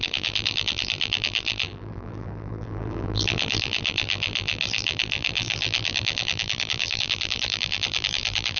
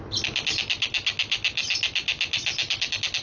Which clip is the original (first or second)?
second